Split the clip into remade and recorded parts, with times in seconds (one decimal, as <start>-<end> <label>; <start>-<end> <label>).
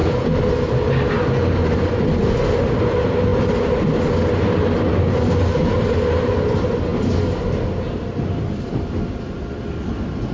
0.0-10.3 recorded